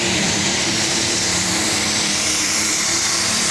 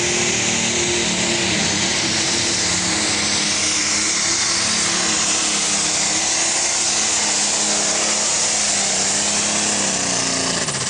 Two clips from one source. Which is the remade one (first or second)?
first